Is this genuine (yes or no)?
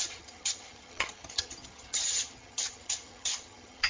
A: no